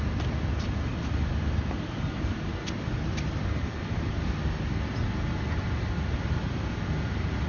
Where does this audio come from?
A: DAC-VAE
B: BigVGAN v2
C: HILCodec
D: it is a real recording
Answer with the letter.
D